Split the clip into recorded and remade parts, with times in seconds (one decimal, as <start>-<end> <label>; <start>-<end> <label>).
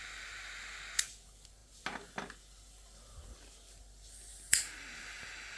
0.0-5.6 recorded